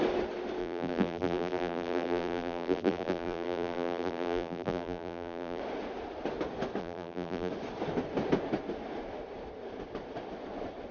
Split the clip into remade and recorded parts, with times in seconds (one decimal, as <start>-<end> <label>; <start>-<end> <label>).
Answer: 0.0-0.6 recorded; 0.6-5.6 remade; 5.6-6.8 recorded; 6.8-7.5 remade; 7.5-10.9 recorded